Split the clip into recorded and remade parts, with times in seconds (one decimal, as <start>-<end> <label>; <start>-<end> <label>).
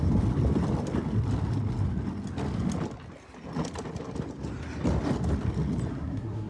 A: 0.0-5.9 recorded; 5.9-6.5 remade